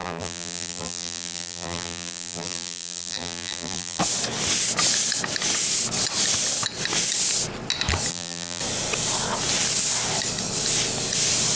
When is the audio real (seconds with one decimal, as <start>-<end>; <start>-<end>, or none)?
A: 4.0-8.1; 8.6-11.6